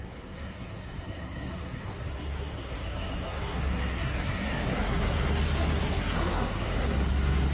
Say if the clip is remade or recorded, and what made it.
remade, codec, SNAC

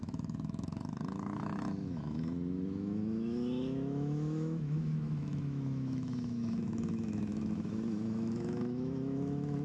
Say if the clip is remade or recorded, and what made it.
remade, autoencoder, DAC-VAE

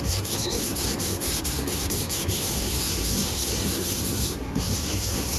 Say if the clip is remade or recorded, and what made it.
remade, codec, SNAC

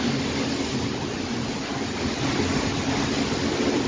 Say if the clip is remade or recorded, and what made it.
recorded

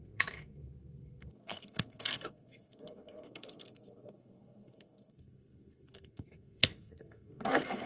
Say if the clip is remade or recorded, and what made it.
remade, codec, SNAC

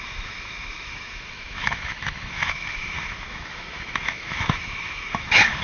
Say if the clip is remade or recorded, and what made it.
remade, autoencoder, DAC-VAE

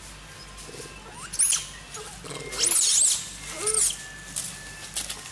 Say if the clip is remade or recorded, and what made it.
recorded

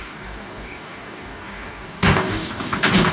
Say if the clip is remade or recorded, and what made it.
remade, codec, DAC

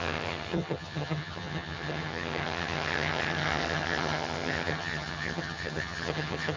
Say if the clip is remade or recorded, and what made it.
remade, vocoder, HiFi-GAN